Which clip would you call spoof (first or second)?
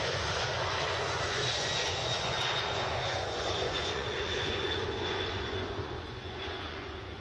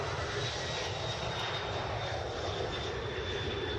first